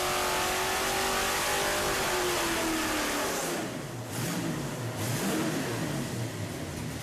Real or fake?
real